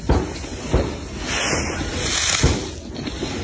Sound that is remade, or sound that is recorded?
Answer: recorded